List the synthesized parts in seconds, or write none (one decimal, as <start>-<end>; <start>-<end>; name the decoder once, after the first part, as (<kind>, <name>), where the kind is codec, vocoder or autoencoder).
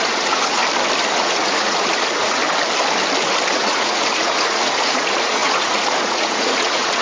0.0-0.6 (vocoder, Vocos); 1.1-2.4; 3.5-7.0